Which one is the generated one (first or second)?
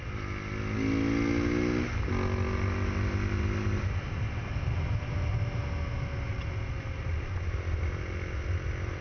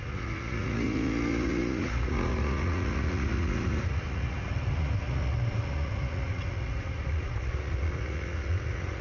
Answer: second